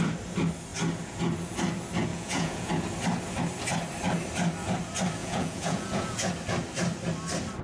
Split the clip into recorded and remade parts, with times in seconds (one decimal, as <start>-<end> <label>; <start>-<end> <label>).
0.0-2.1 recorded; 2.1-2.7 remade; 2.7-5.2 recorded; 5.2-6.3 remade; 6.3-7.6 recorded

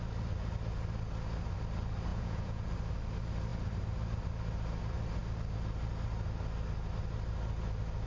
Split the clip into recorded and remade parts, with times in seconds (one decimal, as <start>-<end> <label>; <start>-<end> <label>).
0.0-2.1 recorded; 2.1-2.7 remade; 2.7-8.1 recorded

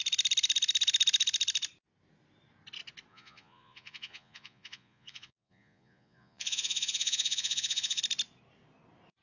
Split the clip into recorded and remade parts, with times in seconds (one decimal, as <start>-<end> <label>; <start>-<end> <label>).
0.0-3.1 recorded; 3.1-8.0 remade; 8.0-9.2 recorded

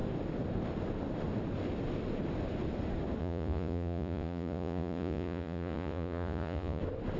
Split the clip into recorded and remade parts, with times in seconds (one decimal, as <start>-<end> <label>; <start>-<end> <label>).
0.0-3.2 recorded; 3.2-6.8 remade; 6.8-7.2 recorded

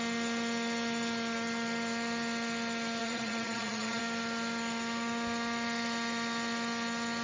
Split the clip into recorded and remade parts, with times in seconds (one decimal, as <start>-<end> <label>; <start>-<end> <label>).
0.0-3.0 recorded; 3.0-4.0 remade; 4.0-7.2 recorded